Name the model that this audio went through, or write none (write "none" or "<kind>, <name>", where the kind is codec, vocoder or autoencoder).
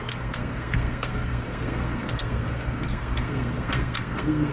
codec, SNAC